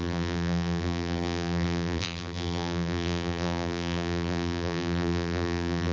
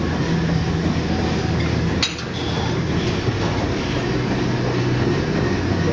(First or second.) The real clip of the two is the second